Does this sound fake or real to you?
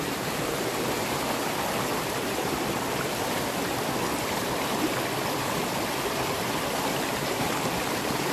real